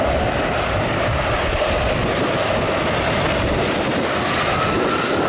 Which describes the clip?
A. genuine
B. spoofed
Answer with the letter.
A